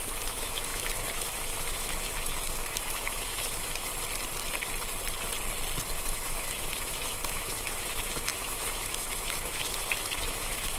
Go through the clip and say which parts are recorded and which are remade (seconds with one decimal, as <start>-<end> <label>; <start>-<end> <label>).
0.0-3.9 remade; 3.9-5.9 recorded; 5.9-10.8 remade